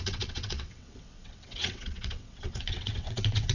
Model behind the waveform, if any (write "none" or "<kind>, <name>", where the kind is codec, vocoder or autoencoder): vocoder, WaveNeXt